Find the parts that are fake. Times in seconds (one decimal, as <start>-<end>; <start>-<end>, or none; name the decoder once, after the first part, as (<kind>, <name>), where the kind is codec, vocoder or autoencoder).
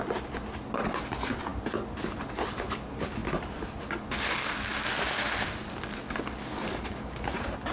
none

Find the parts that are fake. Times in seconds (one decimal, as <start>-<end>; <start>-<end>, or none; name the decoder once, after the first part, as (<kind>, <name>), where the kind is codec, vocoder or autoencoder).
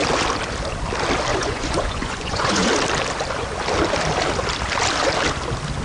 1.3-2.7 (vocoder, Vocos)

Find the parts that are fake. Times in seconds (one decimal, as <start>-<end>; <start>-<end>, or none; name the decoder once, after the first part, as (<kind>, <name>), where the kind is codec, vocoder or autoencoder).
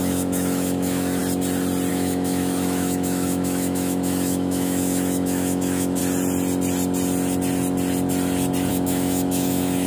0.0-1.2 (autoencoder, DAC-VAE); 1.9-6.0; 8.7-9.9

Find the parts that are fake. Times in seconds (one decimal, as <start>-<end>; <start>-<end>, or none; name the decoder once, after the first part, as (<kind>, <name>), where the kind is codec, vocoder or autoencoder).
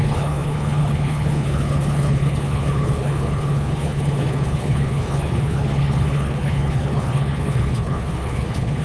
0.0-8.8 (codec, HILCodec)